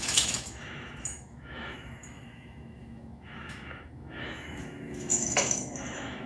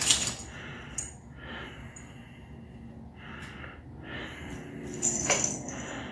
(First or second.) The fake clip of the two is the first